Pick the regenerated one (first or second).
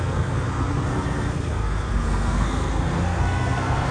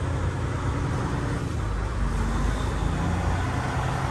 first